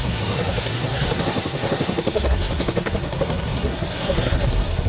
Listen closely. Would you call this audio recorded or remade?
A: remade